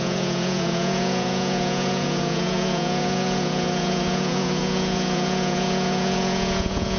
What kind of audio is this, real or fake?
fake